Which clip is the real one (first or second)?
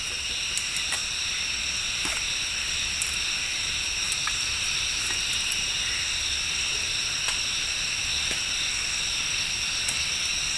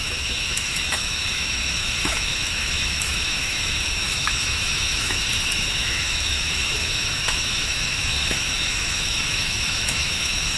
first